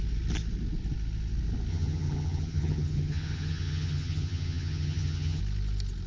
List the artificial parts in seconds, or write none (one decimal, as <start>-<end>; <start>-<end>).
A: 1.7-5.4